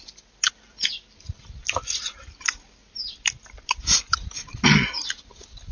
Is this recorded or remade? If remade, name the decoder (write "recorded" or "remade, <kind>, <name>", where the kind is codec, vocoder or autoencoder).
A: recorded